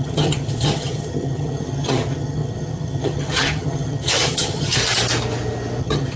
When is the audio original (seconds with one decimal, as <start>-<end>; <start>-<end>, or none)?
4.8-5.8